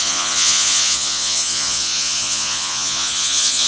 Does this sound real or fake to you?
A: fake